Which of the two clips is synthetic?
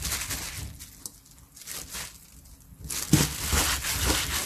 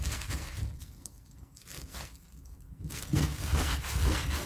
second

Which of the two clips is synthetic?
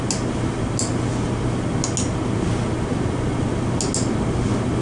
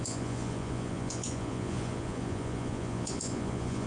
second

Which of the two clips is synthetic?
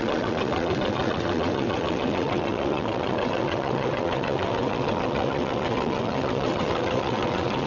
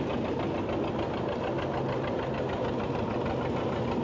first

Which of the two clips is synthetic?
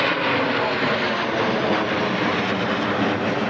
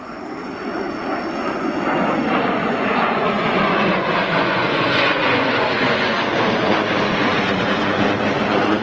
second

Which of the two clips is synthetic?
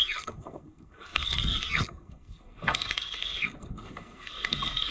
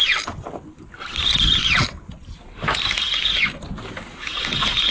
first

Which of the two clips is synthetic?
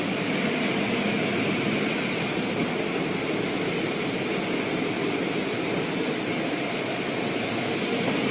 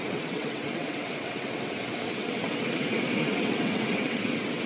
second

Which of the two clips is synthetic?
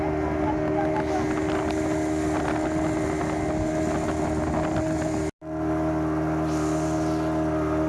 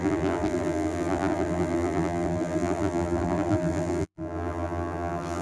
second